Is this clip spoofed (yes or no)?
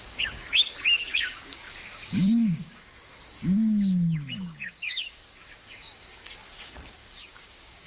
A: yes